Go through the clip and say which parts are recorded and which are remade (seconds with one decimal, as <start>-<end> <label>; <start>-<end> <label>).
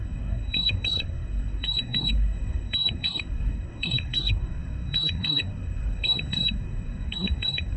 0.0-7.8 remade